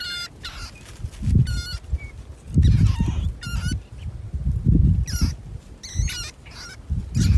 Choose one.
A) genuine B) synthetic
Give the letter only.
A